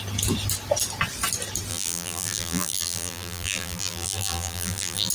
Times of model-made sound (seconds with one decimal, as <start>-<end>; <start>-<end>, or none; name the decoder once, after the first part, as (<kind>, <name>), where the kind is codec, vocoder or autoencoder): 1.7-5.1 (vocoder, BigVGAN v2)